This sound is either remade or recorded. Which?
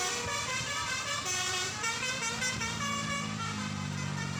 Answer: recorded